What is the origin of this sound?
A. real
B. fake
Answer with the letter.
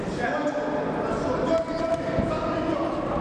A